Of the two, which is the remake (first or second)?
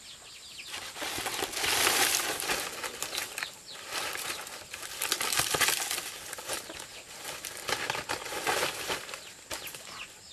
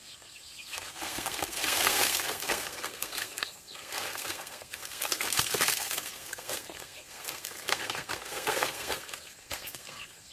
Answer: second